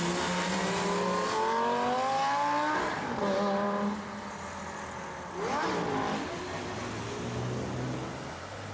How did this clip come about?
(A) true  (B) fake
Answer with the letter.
A